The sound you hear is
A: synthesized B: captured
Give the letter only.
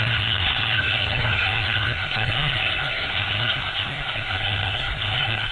A